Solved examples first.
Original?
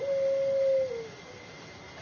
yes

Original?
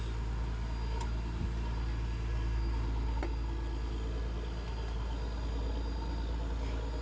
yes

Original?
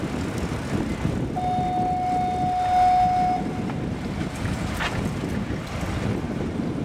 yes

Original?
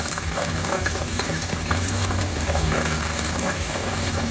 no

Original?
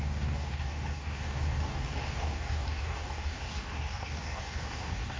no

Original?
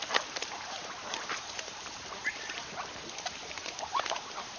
yes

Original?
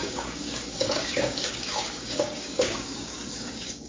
no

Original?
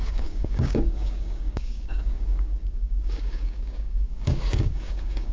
no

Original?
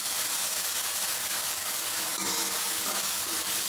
no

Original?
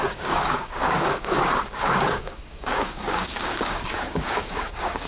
no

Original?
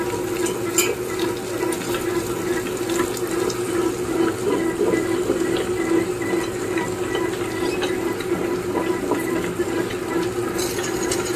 yes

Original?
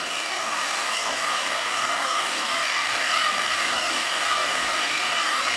no